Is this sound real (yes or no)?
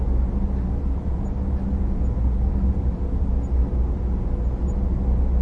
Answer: yes